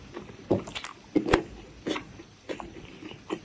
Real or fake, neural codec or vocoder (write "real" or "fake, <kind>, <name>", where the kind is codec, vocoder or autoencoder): fake, vocoder, BigVGAN v2